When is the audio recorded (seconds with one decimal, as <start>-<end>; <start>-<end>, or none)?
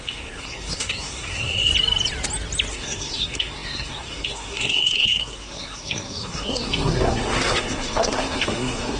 1.7-2.7